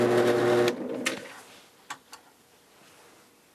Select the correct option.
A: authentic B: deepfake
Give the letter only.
A